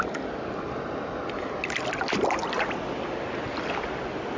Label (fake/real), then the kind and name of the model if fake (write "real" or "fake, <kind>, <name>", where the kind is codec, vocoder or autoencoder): real